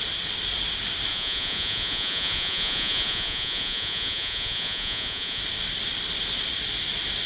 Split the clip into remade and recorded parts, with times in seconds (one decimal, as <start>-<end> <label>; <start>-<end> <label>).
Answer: 0.0-1.1 recorded; 1.1-5.4 remade; 5.4-7.3 recorded